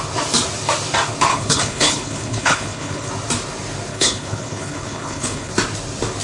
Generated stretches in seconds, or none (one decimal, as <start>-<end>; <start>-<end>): 1.3-3.1; 3.9-5.5